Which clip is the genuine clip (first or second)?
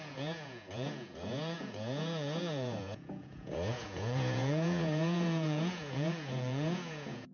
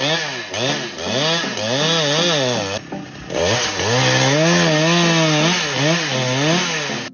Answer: second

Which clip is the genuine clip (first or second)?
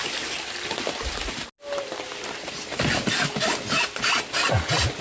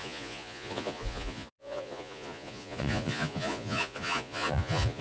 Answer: first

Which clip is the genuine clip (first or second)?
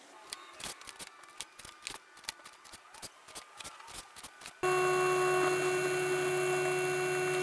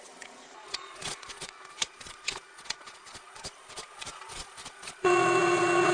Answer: first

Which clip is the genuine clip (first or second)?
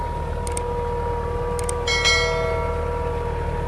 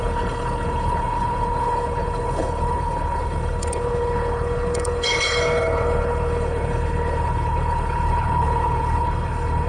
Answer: first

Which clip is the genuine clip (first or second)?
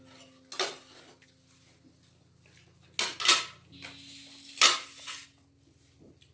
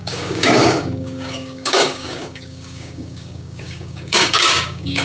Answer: first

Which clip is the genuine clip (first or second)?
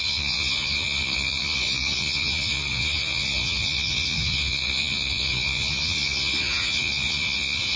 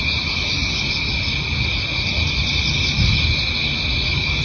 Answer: second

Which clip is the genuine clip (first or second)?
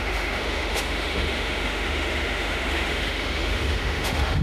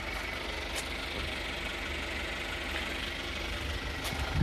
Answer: second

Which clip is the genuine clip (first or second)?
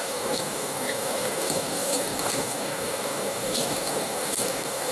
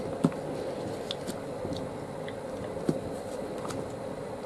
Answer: second